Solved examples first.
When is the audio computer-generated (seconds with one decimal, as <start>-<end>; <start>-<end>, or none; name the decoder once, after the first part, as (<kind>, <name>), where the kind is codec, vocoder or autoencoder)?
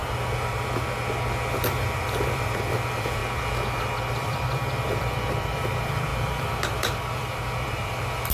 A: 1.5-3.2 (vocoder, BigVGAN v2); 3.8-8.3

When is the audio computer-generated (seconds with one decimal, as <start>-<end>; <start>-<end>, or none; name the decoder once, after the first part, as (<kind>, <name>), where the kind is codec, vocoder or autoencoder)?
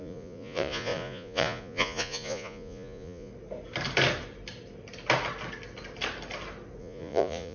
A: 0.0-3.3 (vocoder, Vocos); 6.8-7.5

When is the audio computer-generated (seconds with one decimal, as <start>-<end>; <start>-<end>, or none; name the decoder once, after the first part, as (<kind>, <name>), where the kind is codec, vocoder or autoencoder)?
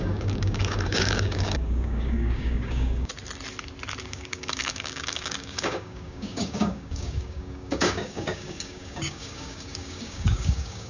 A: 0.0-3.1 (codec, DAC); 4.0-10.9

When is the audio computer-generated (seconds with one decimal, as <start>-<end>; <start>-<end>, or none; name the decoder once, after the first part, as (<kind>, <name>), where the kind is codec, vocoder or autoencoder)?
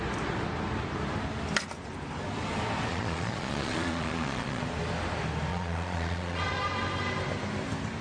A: 2.9-4.6 (vocoder, Vocos); 5.5-6.4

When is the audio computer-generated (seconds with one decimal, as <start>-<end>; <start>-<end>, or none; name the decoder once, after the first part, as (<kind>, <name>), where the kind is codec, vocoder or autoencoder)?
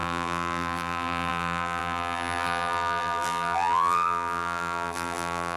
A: 0.0-5.6 (vocoder, BigVGAN v2)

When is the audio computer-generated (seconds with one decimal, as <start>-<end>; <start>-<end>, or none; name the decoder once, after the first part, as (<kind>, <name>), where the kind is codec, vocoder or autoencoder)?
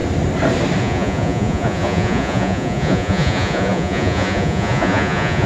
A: 0.8-5.5 (vocoder, Vocos)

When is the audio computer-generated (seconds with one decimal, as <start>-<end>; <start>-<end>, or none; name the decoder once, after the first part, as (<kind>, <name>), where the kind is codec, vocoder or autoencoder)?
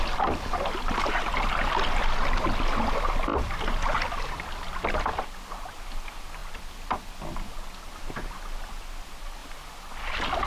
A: none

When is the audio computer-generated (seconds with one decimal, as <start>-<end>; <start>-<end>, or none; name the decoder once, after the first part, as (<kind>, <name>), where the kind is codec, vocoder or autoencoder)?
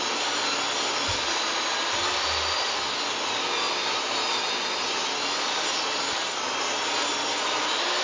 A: none